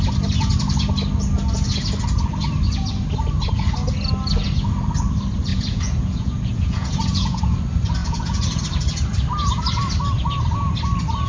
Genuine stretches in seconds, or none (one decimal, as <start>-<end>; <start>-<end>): 0.0-5.5; 7.4-8.0; 8.6-11.3